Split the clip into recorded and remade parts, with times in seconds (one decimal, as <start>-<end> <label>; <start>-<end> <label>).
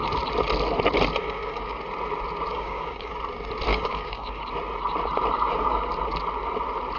0.0-1.2 recorded; 1.2-1.8 remade; 1.8-2.5 recorded; 2.5-3.1 remade; 3.1-3.7 recorded; 3.7-4.4 remade; 4.4-7.0 recorded